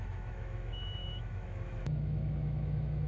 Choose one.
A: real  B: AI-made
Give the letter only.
B